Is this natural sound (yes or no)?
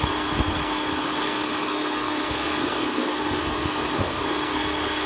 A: no